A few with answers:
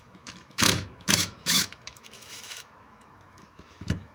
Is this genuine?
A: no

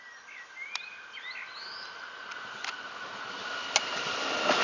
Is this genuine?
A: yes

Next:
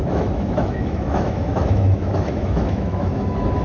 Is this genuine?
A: no